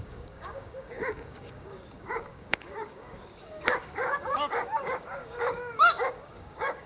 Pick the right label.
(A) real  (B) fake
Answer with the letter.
B